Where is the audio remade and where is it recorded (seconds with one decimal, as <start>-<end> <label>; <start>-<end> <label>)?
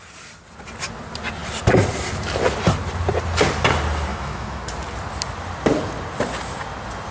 0.0-4.1 recorded; 4.1-4.6 remade; 4.6-7.1 recorded